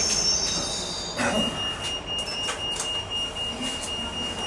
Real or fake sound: real